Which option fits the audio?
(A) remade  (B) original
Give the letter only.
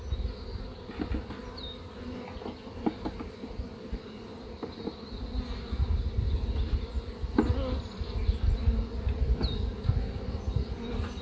B